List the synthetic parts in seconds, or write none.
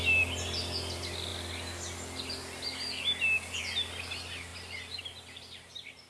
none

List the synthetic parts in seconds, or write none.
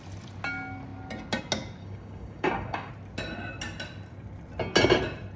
1.8-2.9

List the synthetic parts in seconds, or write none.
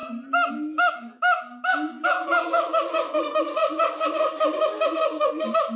0.5-5.8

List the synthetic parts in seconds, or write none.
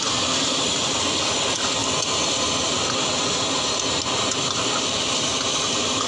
none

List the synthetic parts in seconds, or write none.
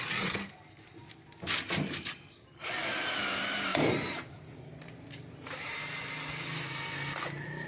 3.7-5.8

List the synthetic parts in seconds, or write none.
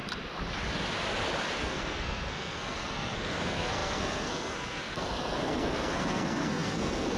1.6-7.2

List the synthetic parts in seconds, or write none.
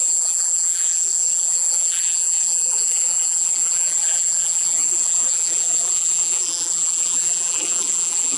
0.0-8.4